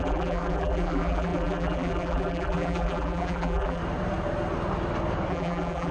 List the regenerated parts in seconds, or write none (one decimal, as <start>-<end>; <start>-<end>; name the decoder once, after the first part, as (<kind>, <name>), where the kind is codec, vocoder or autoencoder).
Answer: 0.0-3.8 (vocoder, BigVGAN v2); 5.3-5.9